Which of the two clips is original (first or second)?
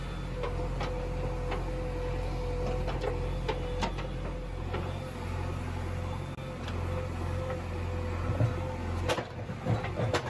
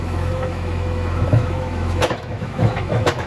first